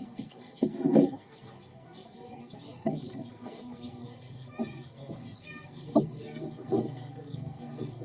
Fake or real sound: fake